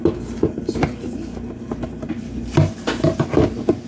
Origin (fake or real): real